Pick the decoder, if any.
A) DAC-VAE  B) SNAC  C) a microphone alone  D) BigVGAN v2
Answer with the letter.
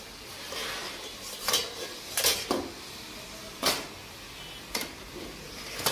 C